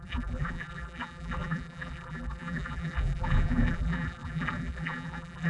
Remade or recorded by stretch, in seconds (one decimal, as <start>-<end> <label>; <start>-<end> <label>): 0.0-5.5 remade

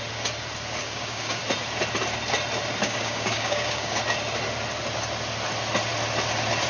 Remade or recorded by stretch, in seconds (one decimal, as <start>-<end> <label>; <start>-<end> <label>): 0.0-0.8 recorded; 0.8-1.4 remade; 1.4-2.8 recorded; 2.8-4.0 remade; 4.0-6.7 recorded

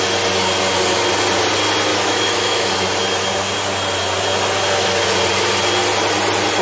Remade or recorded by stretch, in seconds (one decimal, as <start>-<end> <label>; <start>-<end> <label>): 0.0-1.9 recorded; 1.9-2.7 remade; 2.7-6.6 recorded

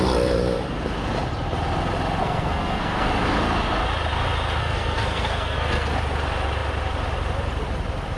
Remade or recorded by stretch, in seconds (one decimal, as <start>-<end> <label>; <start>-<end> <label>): 0.0-2.2 recorded; 2.2-3.1 remade; 3.1-4.6 recorded; 4.6-5.9 remade; 5.9-8.2 recorded

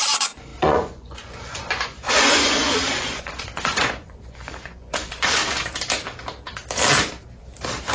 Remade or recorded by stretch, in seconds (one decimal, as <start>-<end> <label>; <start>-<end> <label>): 0.0-5.4 remade; 5.4-7.9 recorded

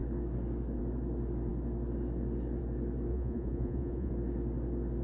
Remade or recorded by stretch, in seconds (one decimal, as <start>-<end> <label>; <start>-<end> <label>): 0.0-3.1 recorded; 3.1-4.1 remade; 4.1-5.0 recorded